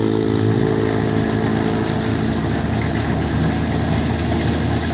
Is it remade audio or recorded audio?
recorded